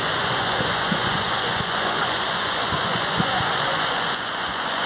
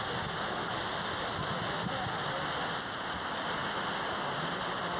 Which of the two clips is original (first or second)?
second